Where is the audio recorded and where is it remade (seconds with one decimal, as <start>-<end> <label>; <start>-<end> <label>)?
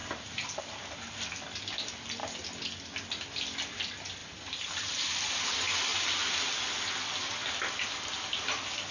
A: 0.0-0.6 remade; 0.6-4.2 recorded; 4.2-5.4 remade; 5.4-8.9 recorded